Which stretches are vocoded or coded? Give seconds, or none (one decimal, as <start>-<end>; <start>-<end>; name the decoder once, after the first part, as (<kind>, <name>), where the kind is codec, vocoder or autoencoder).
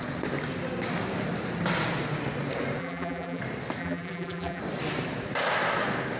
2.8-3.4 (vocoder, BigVGAN v2); 3.8-4.6